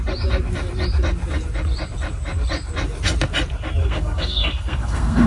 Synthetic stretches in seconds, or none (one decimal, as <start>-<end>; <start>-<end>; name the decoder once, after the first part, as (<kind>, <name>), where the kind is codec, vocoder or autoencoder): 3.8-5.3 (codec, SNAC)